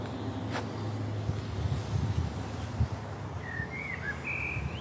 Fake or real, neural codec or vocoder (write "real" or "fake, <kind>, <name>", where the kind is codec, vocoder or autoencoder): real